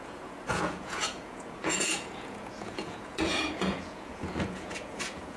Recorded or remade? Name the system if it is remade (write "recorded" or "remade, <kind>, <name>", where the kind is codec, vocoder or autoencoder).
remade, vocoder, Vocos